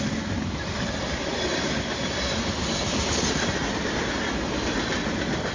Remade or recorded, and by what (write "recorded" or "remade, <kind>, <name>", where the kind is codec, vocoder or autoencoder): recorded